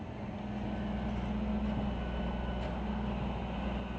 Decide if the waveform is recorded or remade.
recorded